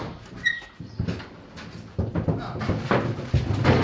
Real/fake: real